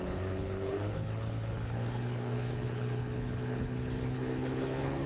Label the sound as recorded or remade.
remade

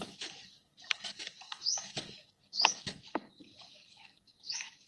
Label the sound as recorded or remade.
remade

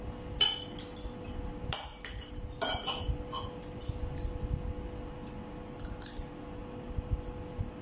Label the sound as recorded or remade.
recorded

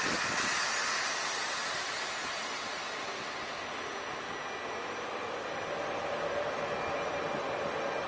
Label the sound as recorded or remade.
recorded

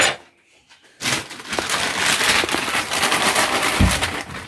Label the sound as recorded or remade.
recorded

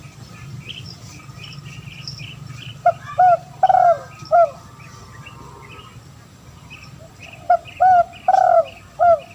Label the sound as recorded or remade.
recorded